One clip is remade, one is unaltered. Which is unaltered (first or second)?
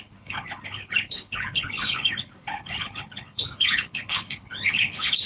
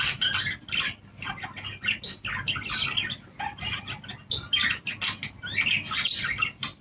second